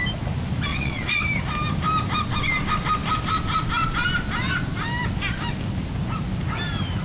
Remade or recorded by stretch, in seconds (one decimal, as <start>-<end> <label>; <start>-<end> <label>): 0.0-0.7 recorded; 0.7-1.2 remade; 1.2-7.0 recorded